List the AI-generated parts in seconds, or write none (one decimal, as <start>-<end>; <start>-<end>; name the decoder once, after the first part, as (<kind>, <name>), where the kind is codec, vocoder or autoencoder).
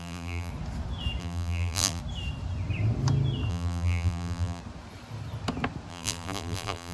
0.0-0.5 (vocoder, BigVGAN v2); 1.2-2.0; 3.5-4.6; 5.9-6.9